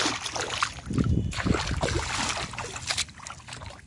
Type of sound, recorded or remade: recorded